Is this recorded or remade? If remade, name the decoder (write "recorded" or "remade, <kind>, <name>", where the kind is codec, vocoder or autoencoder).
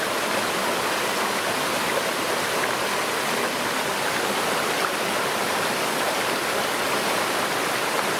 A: recorded